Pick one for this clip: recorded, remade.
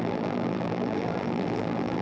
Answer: remade